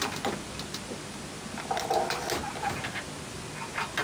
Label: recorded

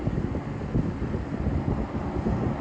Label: recorded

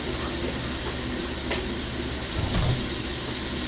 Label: recorded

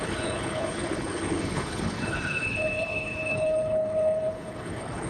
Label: remade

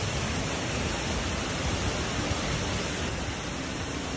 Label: recorded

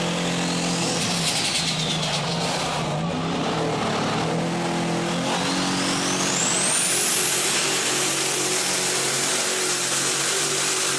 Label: recorded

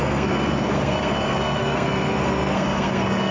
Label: remade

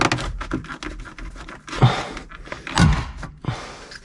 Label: recorded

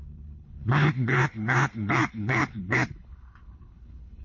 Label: remade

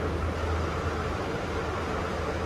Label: recorded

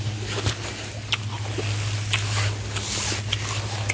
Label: recorded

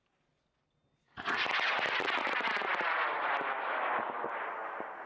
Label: recorded